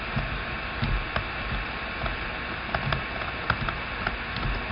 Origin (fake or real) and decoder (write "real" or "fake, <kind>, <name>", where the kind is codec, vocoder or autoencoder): real